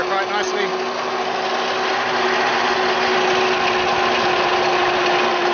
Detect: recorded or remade recorded